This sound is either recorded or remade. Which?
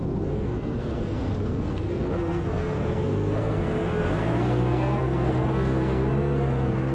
remade